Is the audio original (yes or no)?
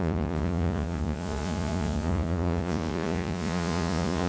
no